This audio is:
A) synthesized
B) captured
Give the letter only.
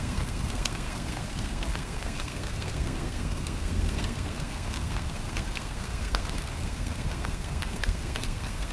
A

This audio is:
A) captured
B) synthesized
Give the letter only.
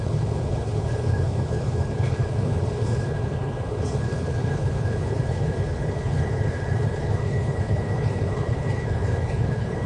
B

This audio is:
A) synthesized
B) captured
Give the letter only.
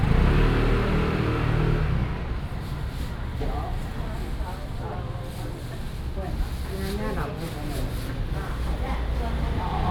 B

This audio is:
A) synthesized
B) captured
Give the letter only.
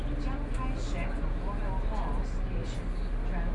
B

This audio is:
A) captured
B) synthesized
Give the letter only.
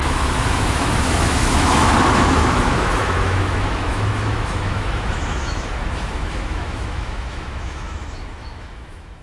B